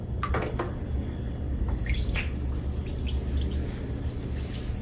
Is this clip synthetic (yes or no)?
no